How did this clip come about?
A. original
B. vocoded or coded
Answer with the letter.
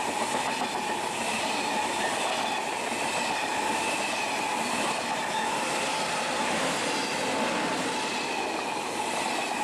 A